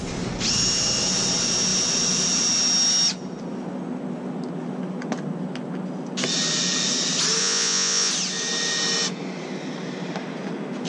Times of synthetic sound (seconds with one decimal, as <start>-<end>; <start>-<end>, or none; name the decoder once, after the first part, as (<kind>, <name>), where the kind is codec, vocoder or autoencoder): 7.4-8.1 (vocoder, Vocos)